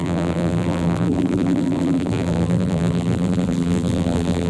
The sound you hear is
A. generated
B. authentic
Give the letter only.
A